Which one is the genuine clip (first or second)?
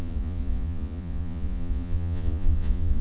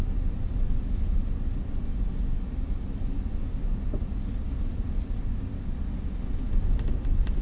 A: second